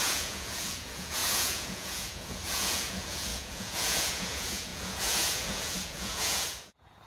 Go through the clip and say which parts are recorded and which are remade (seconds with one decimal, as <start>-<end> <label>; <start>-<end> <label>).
0.0-7.1 remade